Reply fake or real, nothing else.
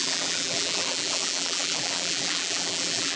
fake